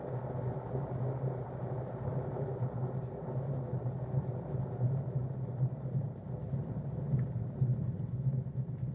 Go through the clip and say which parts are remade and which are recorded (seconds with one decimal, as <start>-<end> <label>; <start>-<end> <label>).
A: 0.0-2.1 remade; 2.1-3.2 recorded; 3.2-7.7 remade; 7.7-8.9 recorded